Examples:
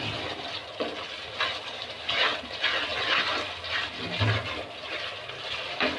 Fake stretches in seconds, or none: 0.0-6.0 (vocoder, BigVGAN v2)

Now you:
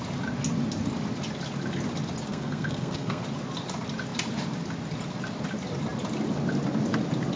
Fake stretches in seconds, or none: 2.3-3.2 (codec, SNAC)

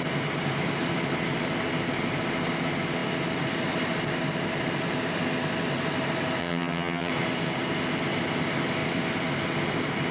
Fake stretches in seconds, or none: 6.4-7.1 (vocoder, HiFi-GAN)

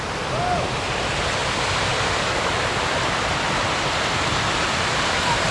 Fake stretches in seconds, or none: none

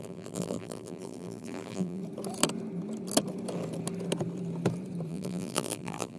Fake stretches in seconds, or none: 0.0-2.0 (vocoder, BigVGAN v2); 5.1-6.2